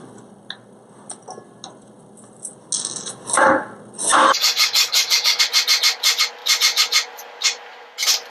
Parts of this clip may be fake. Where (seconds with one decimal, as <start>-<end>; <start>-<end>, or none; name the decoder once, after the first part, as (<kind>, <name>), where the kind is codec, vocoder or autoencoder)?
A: 4.2-5.4 (codec, DAC)